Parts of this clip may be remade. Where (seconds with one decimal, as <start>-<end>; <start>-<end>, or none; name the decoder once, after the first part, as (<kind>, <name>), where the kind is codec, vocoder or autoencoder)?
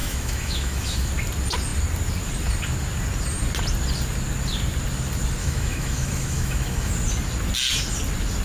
0.0-1.1 (autoencoder, DAC-VAE); 5.4-6.9